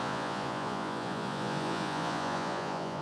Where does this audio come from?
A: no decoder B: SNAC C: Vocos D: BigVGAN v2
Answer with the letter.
C